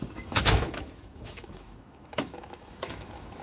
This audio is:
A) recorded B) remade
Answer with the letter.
B